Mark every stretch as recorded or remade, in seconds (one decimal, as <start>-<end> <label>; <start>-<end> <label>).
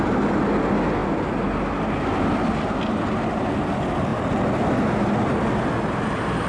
0.0-6.5 recorded